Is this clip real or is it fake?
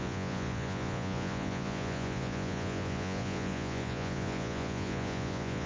fake